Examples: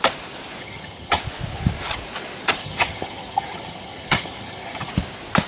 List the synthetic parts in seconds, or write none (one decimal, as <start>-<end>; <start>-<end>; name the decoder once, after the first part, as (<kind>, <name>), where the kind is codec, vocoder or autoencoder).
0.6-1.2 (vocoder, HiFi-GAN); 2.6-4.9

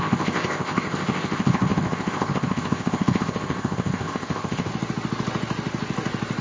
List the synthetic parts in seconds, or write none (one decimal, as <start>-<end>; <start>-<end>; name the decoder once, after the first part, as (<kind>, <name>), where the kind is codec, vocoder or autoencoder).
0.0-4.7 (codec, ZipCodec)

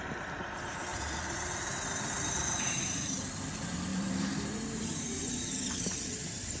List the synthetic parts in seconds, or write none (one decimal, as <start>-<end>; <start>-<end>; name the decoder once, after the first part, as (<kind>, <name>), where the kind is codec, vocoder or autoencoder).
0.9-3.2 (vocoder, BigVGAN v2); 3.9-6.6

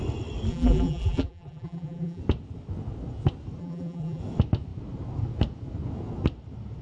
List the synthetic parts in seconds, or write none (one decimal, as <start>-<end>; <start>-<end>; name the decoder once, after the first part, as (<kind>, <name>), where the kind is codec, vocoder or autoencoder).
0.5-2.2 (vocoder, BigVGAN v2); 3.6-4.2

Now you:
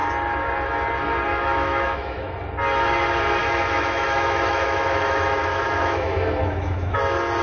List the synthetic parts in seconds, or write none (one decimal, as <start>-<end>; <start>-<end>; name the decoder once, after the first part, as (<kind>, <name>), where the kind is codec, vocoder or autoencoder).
1.3-2.3 (autoencoder, DAC-VAE); 3.4-7.0

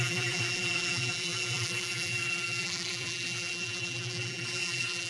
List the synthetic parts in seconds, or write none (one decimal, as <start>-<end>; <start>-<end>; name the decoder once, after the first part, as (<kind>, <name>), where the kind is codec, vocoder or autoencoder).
0.0-5.1 (vocoder, BigVGAN v2)

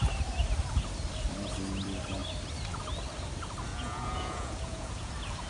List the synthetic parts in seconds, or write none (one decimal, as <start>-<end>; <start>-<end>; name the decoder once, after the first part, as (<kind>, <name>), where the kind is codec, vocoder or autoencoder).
3.7-5.1 (vocoder, Vocos)

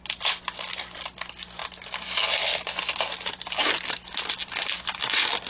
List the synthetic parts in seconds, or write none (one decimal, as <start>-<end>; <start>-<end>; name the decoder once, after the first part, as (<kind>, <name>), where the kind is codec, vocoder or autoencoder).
none